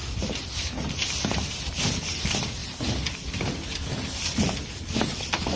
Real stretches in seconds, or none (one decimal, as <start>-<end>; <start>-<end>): 0.0-1.9; 2.6-3.9